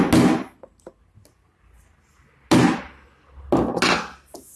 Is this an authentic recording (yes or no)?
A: yes